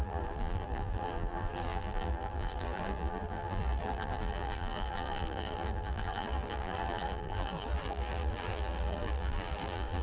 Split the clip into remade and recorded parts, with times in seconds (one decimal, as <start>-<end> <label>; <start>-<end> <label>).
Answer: 0.0-10.0 remade